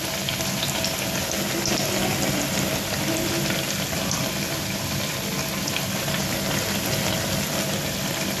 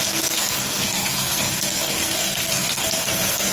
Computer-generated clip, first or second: second